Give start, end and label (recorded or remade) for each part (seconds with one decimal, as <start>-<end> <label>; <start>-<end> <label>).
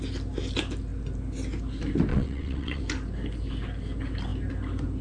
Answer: 0.0-2.1 recorded; 2.1-2.8 remade; 2.8-5.0 recorded